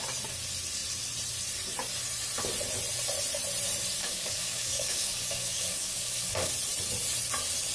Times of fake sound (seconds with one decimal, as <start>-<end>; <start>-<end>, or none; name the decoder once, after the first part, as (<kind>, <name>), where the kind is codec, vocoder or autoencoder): 4.0-6.5 (codec, DAC)